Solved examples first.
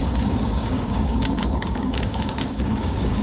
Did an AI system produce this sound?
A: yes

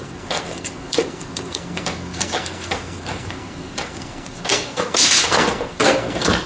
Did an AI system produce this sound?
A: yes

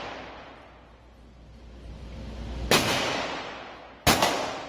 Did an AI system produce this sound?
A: no